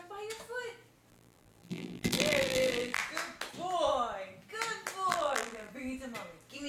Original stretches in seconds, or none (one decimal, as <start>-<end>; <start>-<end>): 0.0-1.1; 3.0-5.1; 5.7-6.7